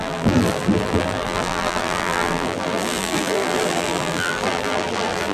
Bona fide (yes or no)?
no